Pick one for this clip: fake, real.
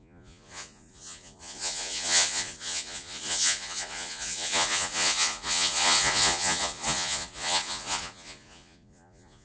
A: fake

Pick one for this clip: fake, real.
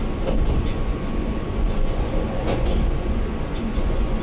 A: fake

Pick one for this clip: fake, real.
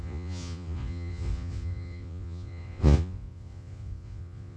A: fake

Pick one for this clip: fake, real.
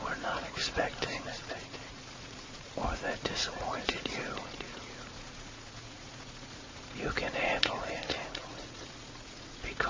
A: fake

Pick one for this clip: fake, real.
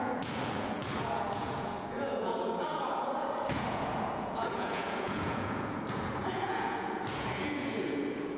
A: fake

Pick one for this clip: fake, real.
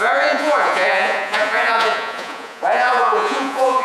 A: fake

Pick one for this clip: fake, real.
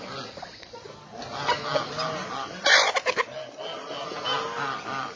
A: real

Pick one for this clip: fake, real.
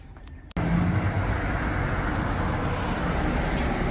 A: real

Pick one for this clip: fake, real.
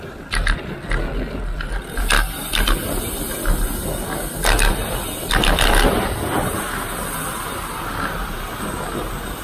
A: real